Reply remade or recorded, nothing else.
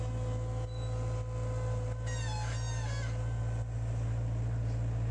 recorded